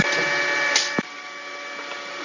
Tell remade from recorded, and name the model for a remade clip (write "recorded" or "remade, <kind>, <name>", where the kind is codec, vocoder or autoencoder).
recorded